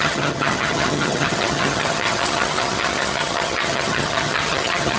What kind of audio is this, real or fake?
fake